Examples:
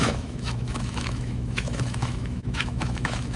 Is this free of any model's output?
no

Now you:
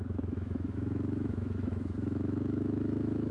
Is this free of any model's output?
no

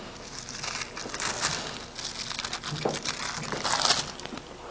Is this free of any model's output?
yes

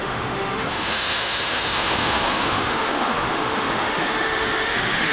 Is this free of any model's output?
no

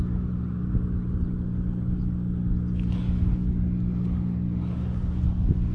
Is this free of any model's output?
yes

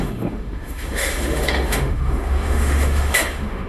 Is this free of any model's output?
no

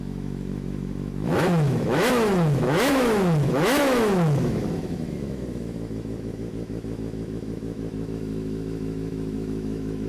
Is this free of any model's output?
no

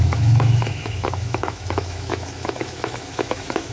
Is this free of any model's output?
no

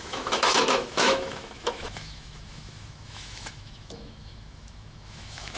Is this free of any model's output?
no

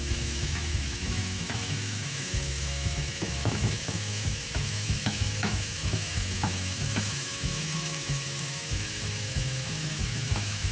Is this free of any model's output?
no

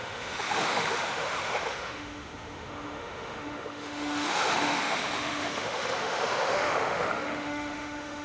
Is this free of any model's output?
no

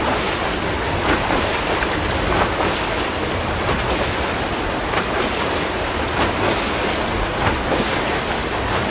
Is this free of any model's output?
yes